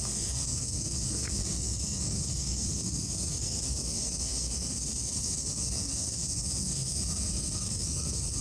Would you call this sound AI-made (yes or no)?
yes